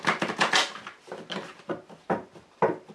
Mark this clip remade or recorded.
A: recorded